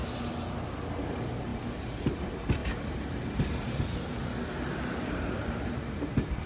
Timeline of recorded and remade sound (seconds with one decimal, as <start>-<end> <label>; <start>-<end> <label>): 0.0-1.0 recorded; 1.0-6.5 remade